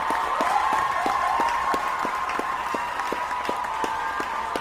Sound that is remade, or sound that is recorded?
recorded